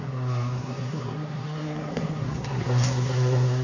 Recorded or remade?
remade